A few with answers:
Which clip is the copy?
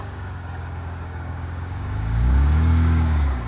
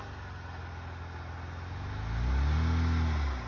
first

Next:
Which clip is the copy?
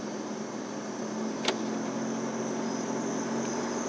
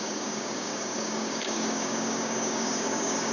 second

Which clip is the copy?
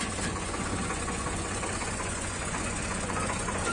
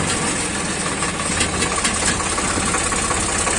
first